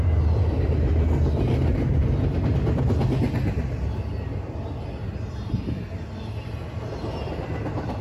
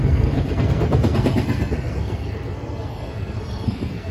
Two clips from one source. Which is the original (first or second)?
first